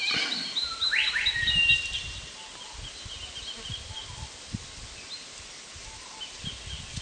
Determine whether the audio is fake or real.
real